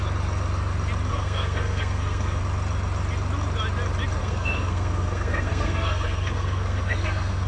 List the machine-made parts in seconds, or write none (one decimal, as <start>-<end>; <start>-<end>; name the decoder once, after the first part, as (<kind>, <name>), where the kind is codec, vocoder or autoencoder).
1.1-2.4 (codec, SNAC); 4.2-7.5